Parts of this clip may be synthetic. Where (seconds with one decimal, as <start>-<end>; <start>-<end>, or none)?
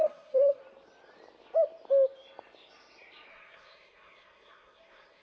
0.0-0.6; 3.3-5.2